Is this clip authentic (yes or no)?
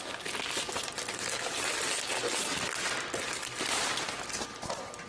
yes